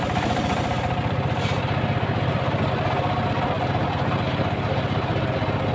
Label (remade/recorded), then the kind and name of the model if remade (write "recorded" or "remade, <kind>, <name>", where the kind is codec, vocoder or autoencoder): recorded